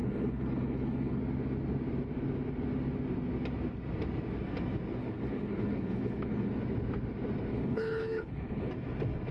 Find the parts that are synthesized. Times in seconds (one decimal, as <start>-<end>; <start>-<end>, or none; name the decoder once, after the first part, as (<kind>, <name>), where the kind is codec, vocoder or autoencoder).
0.0-1.2 (codec, HILCodec); 5.0-6.5; 7.5-8.7